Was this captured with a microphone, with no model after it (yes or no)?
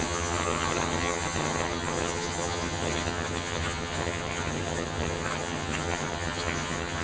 no